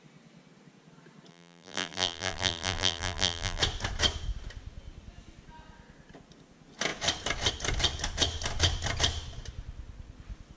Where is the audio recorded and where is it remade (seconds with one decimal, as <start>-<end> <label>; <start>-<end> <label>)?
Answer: 0.0-1.3 recorded; 1.3-3.6 remade; 3.6-10.6 recorded

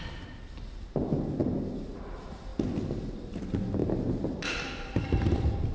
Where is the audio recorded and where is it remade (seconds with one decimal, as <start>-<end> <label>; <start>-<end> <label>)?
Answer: 0.0-5.7 recorded

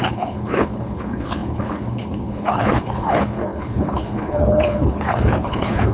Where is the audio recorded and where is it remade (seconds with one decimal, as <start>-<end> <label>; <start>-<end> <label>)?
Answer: 0.0-5.9 remade

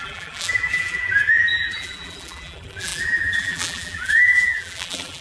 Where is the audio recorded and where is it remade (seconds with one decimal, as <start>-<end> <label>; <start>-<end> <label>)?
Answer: 0.0-5.2 remade